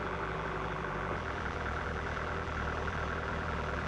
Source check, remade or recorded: remade